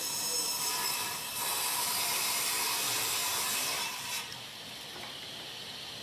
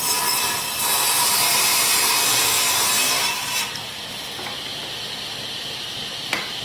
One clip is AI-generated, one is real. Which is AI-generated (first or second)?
first